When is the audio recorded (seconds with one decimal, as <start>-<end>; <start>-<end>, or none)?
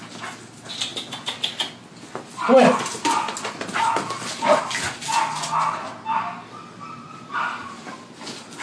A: 0.0-8.6